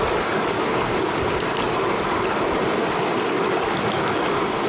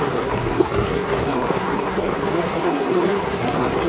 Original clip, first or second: first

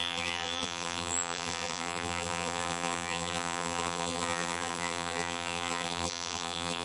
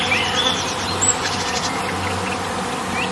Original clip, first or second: second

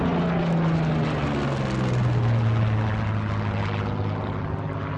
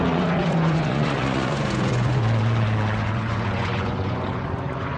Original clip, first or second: first